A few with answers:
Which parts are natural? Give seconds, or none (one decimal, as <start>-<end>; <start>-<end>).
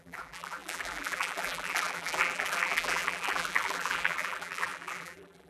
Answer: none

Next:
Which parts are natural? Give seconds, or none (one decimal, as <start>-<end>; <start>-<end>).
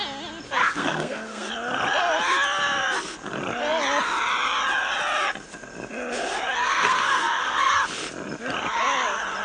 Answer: 0.0-0.6; 1.5-6.6; 7.7-9.4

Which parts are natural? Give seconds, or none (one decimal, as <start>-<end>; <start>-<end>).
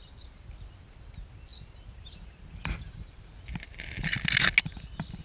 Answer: 0.0-5.2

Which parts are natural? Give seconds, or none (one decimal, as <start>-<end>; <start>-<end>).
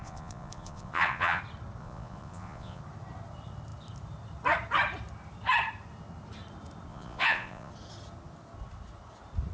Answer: 1.4-1.8; 2.8-6.9; 7.7-9.5